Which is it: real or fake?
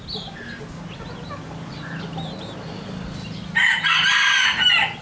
real